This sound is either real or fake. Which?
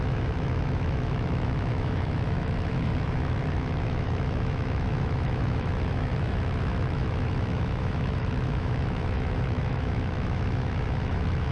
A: fake